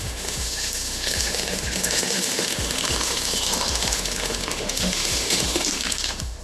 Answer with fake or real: fake